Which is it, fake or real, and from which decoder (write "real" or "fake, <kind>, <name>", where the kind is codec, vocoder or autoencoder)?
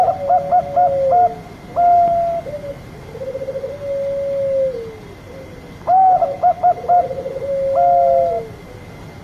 real